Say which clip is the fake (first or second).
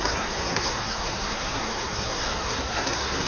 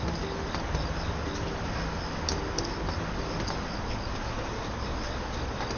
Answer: first